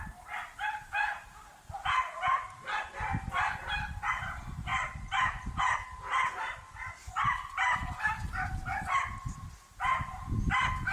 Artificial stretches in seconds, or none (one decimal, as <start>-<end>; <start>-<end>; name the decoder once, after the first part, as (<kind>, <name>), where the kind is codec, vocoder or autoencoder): none

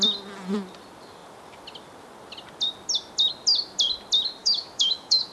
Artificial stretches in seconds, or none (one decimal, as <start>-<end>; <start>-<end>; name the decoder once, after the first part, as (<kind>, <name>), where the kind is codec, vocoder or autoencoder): 4.4-5.3 (autoencoder, DAC-VAE)

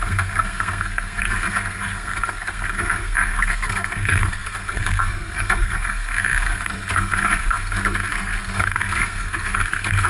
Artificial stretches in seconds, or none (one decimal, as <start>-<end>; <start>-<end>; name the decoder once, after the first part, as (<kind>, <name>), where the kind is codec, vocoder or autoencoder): 0.0-10.1 (codec, SNAC)

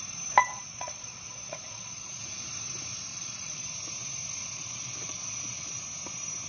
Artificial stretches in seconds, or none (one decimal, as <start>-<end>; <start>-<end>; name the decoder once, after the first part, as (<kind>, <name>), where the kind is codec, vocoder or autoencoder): 0.4-2.2 (vocoder, Vocos); 3.1-3.7; 4.4-5.8

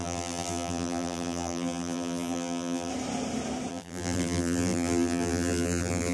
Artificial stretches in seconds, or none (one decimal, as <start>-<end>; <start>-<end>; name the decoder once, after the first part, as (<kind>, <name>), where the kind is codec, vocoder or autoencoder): 0.0-2.9 (vocoder, BigVGAN v2); 3.7-6.1

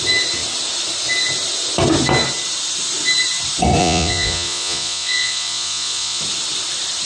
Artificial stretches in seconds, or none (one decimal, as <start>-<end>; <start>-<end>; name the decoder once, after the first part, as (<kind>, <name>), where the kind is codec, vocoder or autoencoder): 3.8-6.2 (vocoder, Vocos)

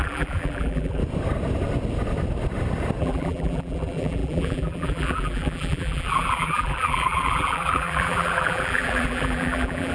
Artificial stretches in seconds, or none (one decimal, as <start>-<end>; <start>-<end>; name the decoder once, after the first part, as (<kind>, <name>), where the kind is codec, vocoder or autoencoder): 0.0-1.0 (vocoder, BigVGAN v2); 3.0-9.9

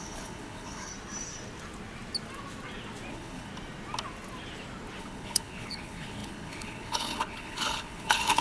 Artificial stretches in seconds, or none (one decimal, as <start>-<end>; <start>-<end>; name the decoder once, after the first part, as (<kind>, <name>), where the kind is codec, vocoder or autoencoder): 0.0-0.9 (codec, HILCodec); 3.1-3.5; 5.0-8.4